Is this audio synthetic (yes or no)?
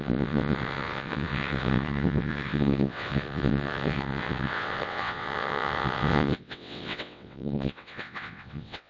yes